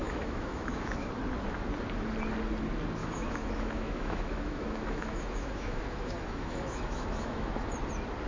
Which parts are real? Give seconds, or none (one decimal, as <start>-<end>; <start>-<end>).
1.1-3.0; 7.5-8.3